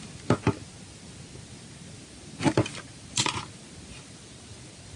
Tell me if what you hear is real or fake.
real